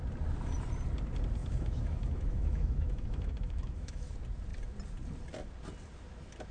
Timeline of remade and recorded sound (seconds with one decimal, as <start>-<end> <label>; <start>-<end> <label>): 0.0-1.4 recorded; 1.4-4.1 remade; 4.1-6.5 recorded